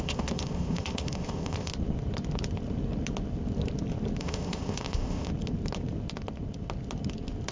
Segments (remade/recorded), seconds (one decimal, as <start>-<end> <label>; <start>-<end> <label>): 0.0-1.7 remade; 1.7-4.2 recorded; 4.2-5.3 remade; 5.3-7.5 recorded